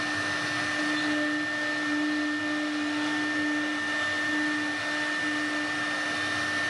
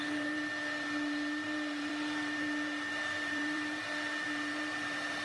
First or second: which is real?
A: first